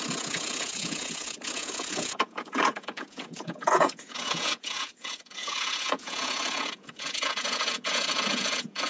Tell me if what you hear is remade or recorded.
remade